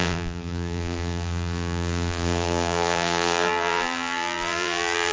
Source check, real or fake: fake